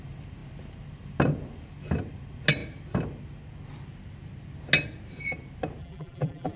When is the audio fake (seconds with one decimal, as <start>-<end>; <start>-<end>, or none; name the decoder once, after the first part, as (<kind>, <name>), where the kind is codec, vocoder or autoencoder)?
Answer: 5.8-6.6 (vocoder, BigVGAN v2)